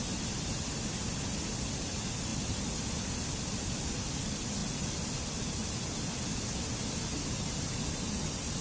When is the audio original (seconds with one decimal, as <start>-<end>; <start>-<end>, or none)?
0.0-8.6